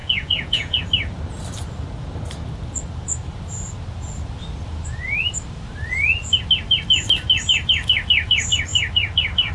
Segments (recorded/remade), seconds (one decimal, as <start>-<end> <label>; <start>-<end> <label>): 0.0-0.8 remade; 0.8-9.5 recorded

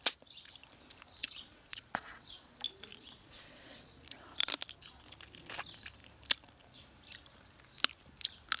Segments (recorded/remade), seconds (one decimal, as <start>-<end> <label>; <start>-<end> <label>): 0.0-1.2 recorded; 1.2-2.5 remade; 2.5-2.9 recorded; 2.9-3.9 remade; 3.9-8.6 recorded

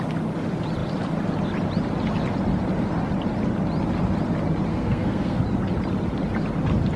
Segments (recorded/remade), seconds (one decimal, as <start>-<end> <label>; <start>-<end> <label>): 0.0-4.7 recorded; 4.7-5.4 remade; 5.4-7.0 recorded

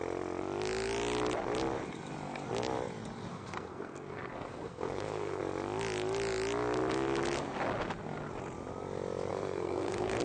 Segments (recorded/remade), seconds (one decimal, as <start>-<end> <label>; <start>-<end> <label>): 0.0-3.3 recorded; 3.3-5.4 remade; 5.4-9.3 recorded; 9.3-10.2 remade

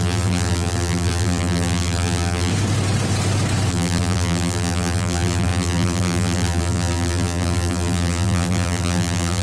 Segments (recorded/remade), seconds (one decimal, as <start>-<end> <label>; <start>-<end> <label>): 0.0-2.5 remade; 2.5-3.7 recorded; 3.7-9.4 remade

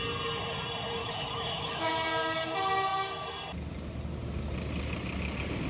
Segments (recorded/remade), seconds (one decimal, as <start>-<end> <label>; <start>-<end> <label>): 0.0-1.0 recorded; 1.0-1.9 remade; 1.9-5.7 recorded